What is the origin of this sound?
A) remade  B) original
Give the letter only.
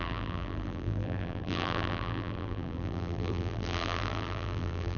A